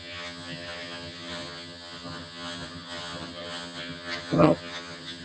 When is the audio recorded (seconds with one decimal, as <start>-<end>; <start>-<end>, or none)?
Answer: none